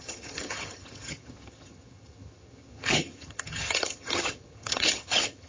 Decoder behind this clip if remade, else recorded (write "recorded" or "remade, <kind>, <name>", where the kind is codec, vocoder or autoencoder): remade, vocoder, HiFi-GAN